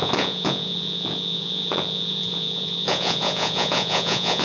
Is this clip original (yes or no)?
no